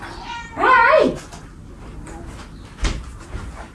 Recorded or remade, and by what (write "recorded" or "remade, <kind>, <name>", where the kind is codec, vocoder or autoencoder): recorded